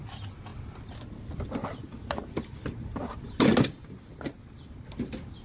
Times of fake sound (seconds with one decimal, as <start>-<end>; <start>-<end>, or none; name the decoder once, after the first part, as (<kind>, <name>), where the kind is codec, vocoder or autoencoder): none